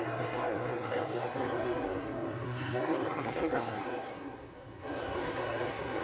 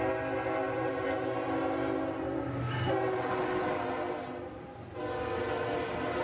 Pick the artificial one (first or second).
first